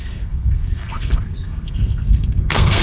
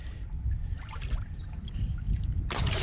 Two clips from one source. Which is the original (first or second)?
second